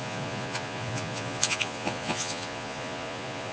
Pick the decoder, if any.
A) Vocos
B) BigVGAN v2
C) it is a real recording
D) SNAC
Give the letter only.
A